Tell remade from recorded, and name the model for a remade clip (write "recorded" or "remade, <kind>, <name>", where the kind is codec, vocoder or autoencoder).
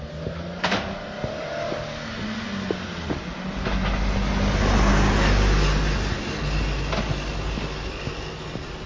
recorded